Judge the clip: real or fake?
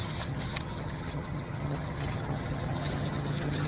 fake